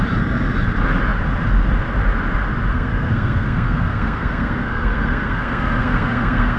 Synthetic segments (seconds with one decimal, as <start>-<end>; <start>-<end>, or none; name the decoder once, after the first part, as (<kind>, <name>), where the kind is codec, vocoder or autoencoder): 2.7-6.6 (codec, SNAC)